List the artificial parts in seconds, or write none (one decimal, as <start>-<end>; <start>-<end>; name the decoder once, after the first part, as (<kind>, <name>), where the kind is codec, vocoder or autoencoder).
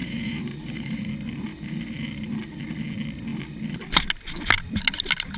0.0-1.1 (vocoder, BigVGAN v2)